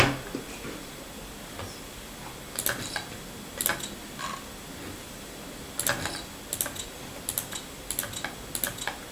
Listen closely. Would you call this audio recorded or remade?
recorded